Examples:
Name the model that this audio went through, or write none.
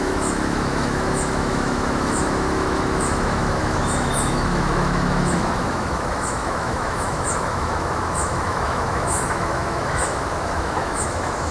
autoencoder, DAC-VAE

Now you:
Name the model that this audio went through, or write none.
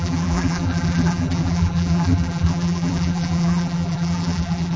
vocoder, BigVGAN v2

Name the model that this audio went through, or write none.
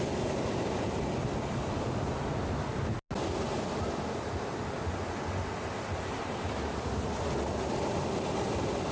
none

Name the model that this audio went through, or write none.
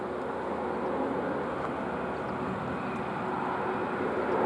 none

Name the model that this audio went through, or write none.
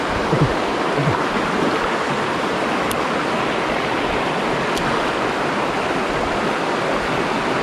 none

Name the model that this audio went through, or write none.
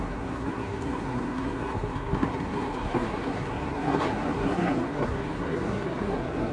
codec, SNAC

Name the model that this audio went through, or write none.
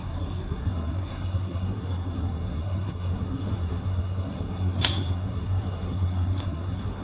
codec, SNAC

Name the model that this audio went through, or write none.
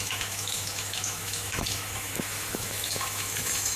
autoencoder, DAC-VAE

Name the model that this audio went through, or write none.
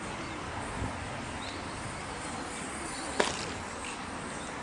none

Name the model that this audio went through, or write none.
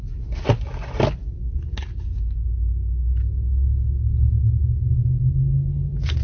none